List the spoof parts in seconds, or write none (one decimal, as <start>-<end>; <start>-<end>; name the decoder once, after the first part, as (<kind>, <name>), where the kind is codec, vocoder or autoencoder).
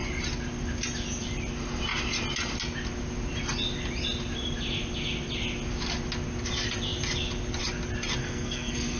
8.2-9.0 (codec, SNAC)